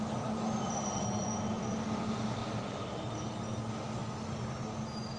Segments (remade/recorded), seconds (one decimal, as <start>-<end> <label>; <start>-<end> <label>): 0.0-5.2 recorded